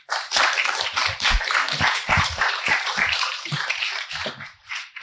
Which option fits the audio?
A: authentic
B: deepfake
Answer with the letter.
B